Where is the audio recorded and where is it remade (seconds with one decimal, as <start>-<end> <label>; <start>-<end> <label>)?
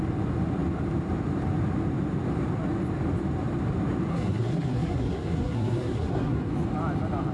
0.0-4.1 recorded; 4.1-6.5 remade; 6.5-7.3 recorded